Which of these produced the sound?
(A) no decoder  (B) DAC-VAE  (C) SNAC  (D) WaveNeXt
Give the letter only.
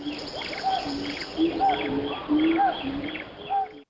A